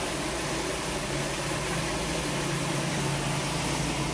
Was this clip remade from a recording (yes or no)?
no